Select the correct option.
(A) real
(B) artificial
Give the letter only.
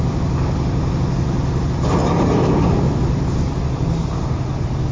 A